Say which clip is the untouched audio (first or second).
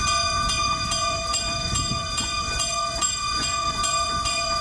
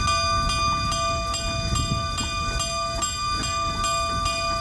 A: second